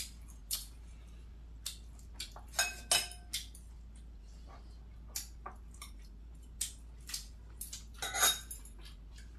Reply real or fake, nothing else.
real